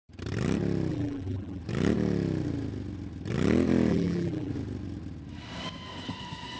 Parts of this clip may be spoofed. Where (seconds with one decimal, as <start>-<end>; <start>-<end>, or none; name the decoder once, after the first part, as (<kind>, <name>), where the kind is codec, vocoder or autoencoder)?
0.9-1.6 (vocoder, BigVGAN v2); 3.9-4.5